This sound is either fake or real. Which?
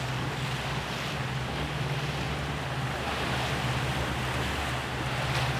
real